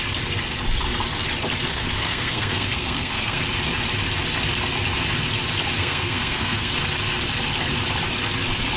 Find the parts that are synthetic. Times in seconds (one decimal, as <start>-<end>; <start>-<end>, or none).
1.7-3.4; 5.8-6.7